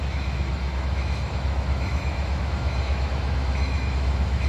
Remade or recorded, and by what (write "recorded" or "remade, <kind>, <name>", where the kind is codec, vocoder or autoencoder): remade, autoencoder, DAC-VAE